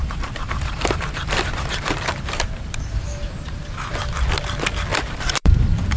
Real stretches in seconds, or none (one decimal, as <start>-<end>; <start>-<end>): 3.6-4.9; 5.6-6.0